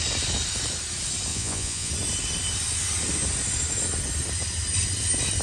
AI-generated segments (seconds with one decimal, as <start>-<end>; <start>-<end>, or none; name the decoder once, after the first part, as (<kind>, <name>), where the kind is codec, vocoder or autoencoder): 1.3-1.9 (vocoder, Vocos)